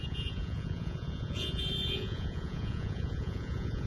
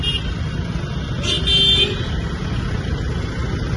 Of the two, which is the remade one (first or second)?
first